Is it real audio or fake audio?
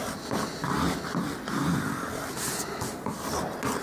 real